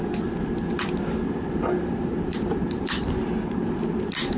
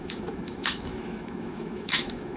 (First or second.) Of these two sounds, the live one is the first